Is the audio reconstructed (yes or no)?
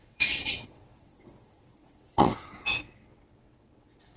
yes